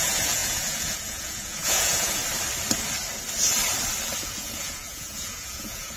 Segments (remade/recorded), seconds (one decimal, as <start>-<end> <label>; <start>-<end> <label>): 0.0-2.2 remade; 2.2-4.2 recorded; 4.2-6.0 remade